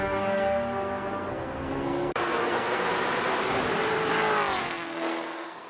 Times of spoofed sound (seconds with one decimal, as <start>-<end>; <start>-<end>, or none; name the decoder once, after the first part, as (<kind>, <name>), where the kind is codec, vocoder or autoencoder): 0.0-2.9 (codec, SNAC); 4.6-5.7